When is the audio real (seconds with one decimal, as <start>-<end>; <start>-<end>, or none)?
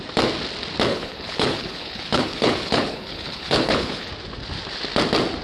0.0-0.9; 4.1-5.4